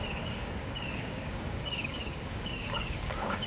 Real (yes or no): no